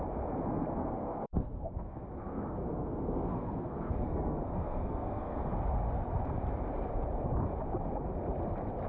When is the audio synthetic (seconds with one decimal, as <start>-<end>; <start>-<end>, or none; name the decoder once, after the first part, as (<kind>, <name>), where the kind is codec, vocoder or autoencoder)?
0.8-5.5 (codec, SNAC)